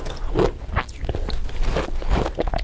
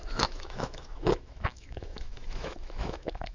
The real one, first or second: first